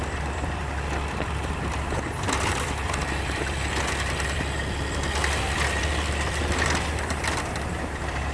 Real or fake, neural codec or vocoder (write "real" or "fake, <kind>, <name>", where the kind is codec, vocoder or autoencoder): fake, vocoder, BigVGAN v2